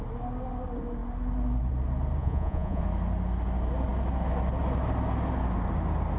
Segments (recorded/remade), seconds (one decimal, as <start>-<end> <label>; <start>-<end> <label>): 0.0-2.2 recorded; 2.2-2.8 remade; 2.8-6.2 recorded